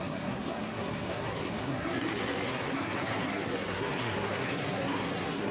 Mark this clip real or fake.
fake